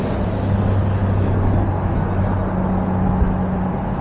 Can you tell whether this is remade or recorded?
recorded